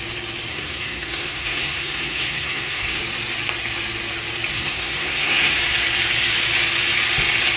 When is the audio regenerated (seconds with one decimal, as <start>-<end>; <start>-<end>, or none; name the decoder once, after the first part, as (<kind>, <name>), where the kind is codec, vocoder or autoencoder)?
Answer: 0.5-3.0 (codec, SNAC); 4.5-5.6